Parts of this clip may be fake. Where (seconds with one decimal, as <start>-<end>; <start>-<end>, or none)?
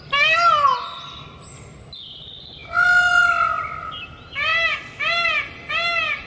none